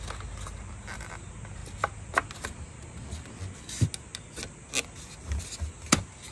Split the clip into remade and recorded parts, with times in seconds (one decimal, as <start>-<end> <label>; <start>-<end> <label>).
0.0-6.3 recorded